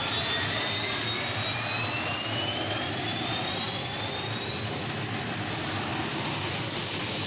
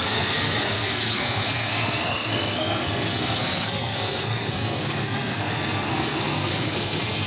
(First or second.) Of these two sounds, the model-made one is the second